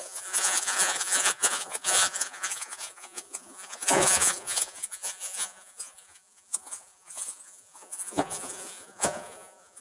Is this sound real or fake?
fake